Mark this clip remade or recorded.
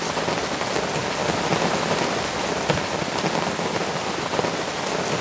recorded